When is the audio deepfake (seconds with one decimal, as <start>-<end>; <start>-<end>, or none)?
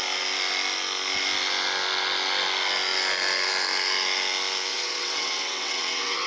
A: 4.7-6.3